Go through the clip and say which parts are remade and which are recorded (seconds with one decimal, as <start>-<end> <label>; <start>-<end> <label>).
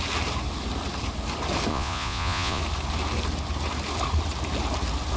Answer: 0.0-1.7 recorded; 1.7-2.6 remade; 2.6-5.2 recorded